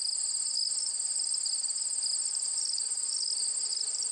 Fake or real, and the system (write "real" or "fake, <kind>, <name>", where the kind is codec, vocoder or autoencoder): real